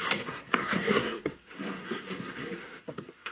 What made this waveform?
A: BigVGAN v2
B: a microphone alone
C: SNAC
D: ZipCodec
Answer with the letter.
C